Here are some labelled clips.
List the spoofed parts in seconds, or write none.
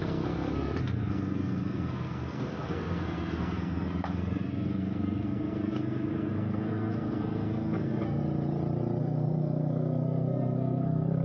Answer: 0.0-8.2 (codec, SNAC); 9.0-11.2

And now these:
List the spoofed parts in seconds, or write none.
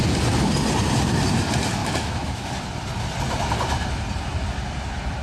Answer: 1.8-2.5 (autoencoder, DAC-VAE)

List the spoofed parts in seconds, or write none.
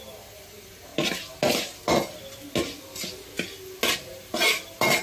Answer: 0.0-0.9 (vocoder, BigVGAN v2); 3.9-5.0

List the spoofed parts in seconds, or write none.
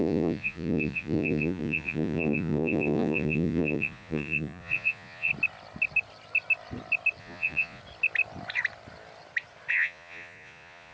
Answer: 0.0-5.3 (vocoder, Vocos); 7.2-7.8; 9.7-10.9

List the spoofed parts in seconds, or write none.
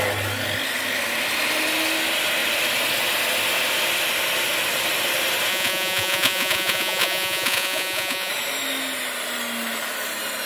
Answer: 5.5-8.3 (vocoder, Vocos)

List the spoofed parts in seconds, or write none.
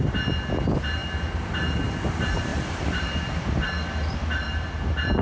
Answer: 1.0-1.9 (vocoder, BigVGAN v2); 2.5-4.7